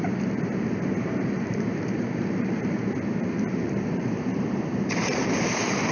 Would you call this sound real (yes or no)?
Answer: no